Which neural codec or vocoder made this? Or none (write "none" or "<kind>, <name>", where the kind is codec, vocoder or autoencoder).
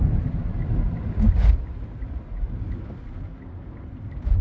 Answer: none